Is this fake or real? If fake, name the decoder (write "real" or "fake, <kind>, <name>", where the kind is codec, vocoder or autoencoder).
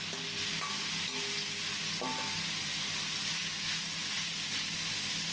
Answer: real